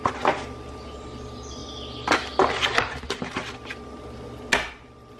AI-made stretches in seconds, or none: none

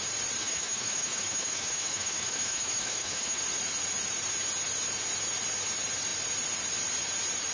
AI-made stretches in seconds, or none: 0.4-3.4 (autoencoder, DAC-VAE)